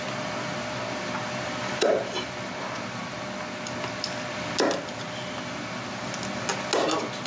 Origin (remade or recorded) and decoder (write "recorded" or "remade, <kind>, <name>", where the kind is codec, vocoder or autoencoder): recorded